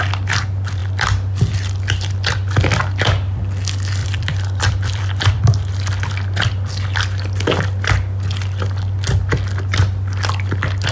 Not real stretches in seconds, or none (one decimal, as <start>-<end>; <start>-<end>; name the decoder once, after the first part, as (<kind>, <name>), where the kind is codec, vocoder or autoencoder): 4.0-5.4 (vocoder, BigVGAN v2)